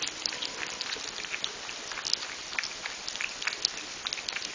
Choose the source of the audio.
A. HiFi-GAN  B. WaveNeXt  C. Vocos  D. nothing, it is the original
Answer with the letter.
D